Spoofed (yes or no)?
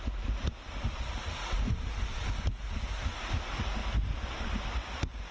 no